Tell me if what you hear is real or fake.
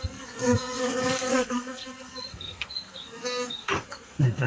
fake